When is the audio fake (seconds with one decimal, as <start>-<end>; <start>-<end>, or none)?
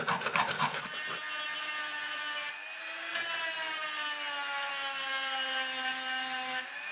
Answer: none